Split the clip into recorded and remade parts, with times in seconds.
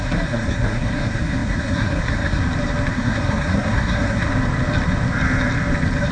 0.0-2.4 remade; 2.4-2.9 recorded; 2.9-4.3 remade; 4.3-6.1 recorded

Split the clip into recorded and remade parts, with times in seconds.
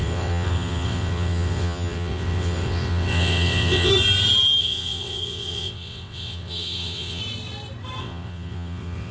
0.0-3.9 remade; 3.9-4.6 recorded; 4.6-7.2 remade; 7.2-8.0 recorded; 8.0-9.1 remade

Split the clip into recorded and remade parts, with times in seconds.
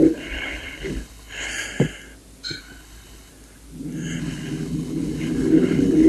0.0-1.5 remade; 1.5-2.6 recorded; 2.6-3.3 remade; 3.3-4.2 recorded; 4.2-6.1 remade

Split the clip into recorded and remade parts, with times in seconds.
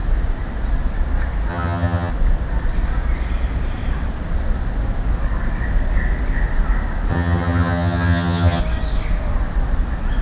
0.0-1.5 recorded; 1.5-2.1 remade; 2.1-7.1 recorded; 7.1-8.6 remade; 8.6-10.2 recorded